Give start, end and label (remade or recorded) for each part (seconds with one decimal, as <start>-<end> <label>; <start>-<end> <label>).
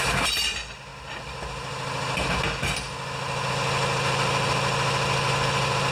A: 0.0-5.9 recorded